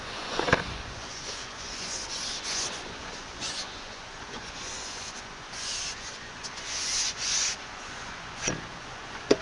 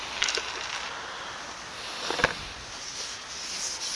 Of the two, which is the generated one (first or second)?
first